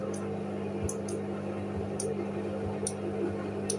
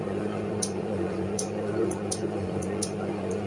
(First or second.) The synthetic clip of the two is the second